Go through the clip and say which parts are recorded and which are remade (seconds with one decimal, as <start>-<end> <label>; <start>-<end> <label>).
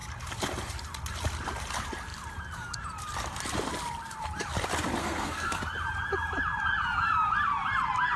0.0-5.0 recorded; 5.0-5.6 remade; 5.6-8.2 recorded